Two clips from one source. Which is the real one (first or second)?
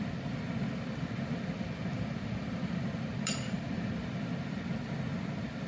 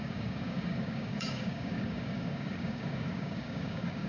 first